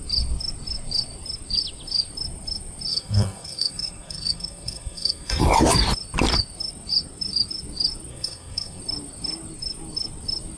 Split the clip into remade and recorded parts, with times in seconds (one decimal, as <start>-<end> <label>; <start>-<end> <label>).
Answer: 0.0-2.9 recorded; 2.9-5.4 remade; 5.4-8.1 recorded; 8.1-8.8 remade; 8.8-10.6 recorded